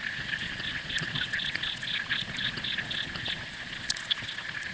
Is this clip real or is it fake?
fake